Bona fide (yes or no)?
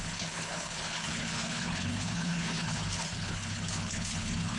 no